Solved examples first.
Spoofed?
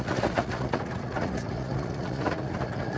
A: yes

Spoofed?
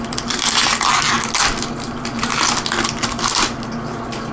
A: no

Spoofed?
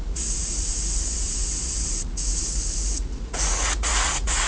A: yes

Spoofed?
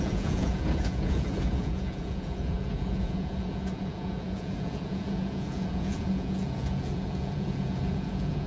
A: yes